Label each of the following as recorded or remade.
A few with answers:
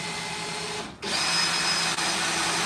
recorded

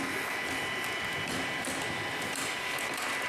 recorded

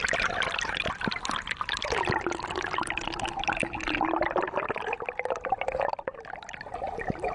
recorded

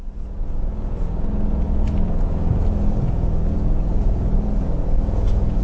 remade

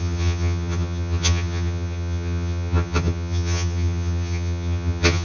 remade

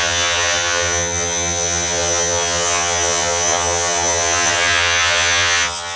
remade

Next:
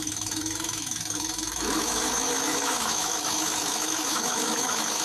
remade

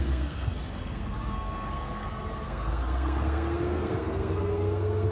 remade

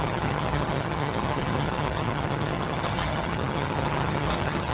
remade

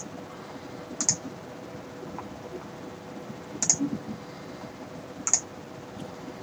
recorded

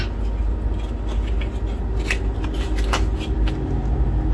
recorded